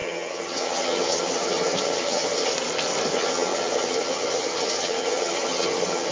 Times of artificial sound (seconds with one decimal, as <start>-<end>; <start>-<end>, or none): 0.0-2.5; 3.1-6.1